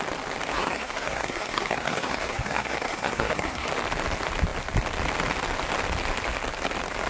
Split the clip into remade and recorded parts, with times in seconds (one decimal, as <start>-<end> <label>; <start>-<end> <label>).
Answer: 0.0-0.5 recorded; 0.5-3.7 remade; 3.7-7.1 recorded